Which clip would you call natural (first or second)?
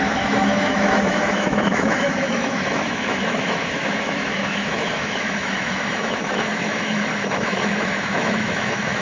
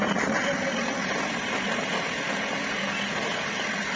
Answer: second